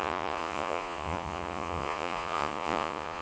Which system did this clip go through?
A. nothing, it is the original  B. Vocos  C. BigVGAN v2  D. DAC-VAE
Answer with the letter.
B